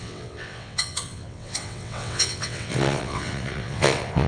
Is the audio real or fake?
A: fake